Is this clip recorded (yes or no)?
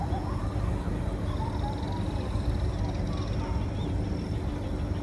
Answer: yes